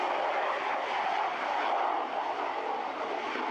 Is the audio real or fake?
real